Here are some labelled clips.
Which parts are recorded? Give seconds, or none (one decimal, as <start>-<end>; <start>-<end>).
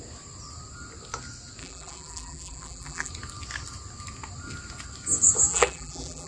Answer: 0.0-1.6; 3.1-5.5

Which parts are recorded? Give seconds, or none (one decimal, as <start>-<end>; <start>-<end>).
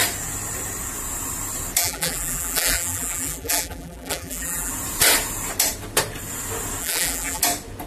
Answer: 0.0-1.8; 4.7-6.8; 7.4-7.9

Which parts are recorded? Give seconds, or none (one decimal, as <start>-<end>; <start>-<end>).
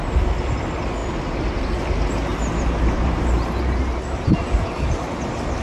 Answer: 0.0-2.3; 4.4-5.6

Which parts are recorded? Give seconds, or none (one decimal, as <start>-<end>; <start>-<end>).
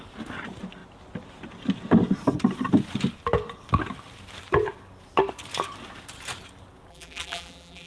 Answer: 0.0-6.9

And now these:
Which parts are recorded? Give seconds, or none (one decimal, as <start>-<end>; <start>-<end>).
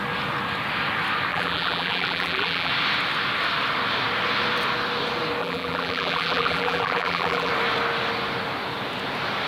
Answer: 0.0-1.3; 2.7-5.4; 7.5-9.5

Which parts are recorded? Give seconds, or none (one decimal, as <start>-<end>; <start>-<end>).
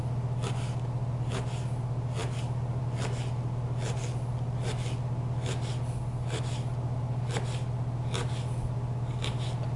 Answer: 0.0-9.8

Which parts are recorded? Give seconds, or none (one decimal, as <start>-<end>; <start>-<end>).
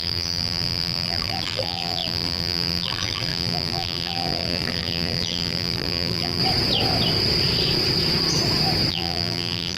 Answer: 6.4-8.9